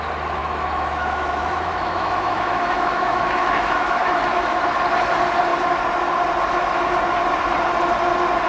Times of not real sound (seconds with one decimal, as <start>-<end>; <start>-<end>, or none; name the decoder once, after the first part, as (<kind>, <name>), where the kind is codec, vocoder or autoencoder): 0.4-4.6 (autoencoder, DAC-VAE)